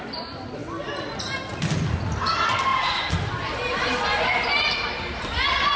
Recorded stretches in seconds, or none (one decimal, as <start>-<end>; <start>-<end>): 0.0-5.8